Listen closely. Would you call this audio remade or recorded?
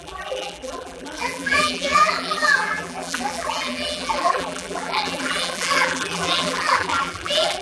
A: remade